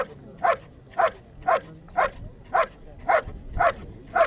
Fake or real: real